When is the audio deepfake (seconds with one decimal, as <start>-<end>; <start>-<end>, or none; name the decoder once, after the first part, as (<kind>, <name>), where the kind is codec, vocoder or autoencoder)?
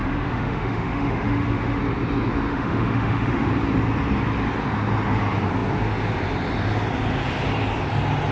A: 0.0-1.8 (autoencoder, DAC-VAE); 2.5-3.5